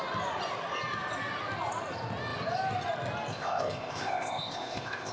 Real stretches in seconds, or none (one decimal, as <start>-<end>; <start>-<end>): 0.0-3.3